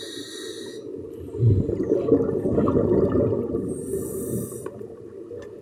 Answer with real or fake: real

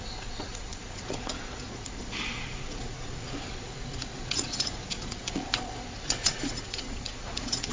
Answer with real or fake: fake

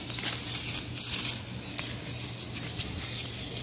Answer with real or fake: real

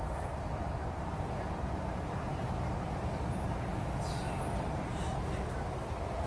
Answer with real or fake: real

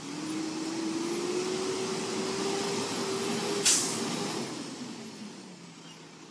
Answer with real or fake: real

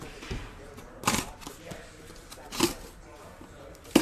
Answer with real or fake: real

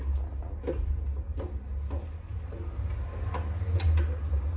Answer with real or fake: real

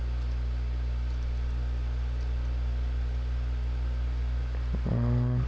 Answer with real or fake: real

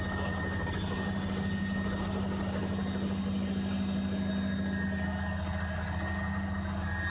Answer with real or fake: real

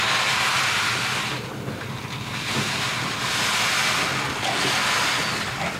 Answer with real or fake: real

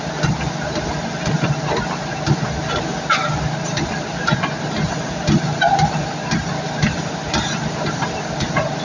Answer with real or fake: real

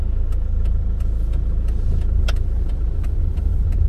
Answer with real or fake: real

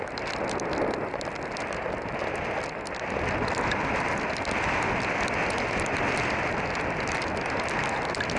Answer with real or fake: real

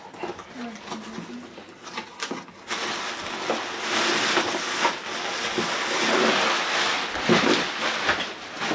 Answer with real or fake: real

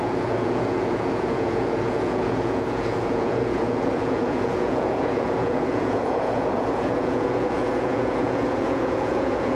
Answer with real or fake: fake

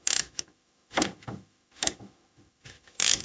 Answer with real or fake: fake